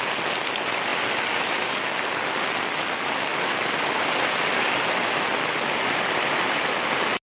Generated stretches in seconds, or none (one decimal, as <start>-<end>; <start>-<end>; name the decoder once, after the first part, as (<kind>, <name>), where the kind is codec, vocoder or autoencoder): none